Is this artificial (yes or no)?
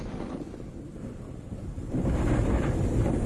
no